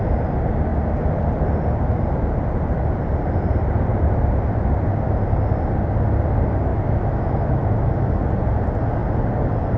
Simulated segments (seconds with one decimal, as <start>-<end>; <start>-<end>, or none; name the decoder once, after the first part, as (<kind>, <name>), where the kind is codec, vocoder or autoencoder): 6.7-8.2 (autoencoder, DAC-VAE)

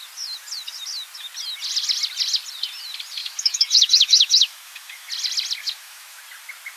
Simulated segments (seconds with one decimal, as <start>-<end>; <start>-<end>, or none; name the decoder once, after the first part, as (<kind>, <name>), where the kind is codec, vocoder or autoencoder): 3.2-5.1 (autoencoder, DAC-VAE); 5.6-6.2

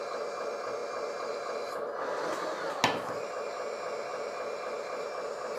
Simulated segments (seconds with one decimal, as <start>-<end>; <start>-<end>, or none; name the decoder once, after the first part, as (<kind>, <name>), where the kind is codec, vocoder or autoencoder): none

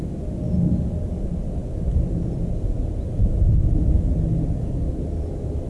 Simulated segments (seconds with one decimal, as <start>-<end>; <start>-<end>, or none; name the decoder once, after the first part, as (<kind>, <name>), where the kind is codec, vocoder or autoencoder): none

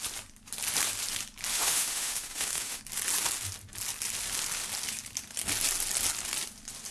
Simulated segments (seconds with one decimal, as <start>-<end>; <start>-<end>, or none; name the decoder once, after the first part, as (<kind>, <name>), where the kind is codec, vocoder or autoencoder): 1.5-2.8 (autoencoder, DAC-VAE)

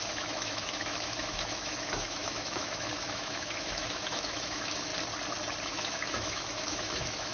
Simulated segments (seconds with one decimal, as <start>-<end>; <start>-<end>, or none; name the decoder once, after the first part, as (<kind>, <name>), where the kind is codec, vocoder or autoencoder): 0.0-4.9 (autoencoder, DAC-VAE); 5.7-7.3

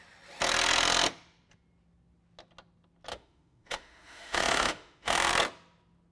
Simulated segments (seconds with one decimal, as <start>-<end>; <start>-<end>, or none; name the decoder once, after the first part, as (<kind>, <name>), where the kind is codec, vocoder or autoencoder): 3.1-5.3 (autoencoder, DAC-VAE)